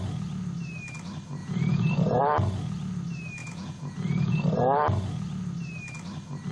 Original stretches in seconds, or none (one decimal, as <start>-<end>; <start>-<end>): 0.0-1.4; 2.2-3.4; 4.4-6.5